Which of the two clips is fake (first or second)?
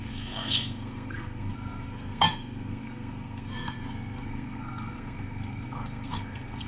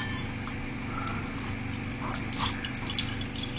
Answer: first